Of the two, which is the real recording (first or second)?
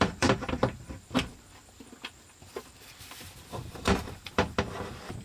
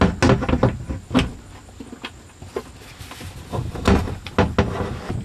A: second